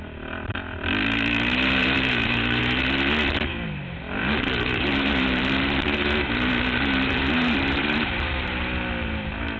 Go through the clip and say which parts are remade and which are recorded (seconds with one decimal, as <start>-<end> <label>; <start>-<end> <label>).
0.0-1.8 recorded; 1.8-2.6 remade; 2.6-4.2 recorded; 4.2-8.1 remade; 8.1-9.6 recorded